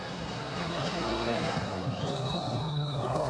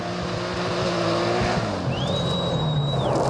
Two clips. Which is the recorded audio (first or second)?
second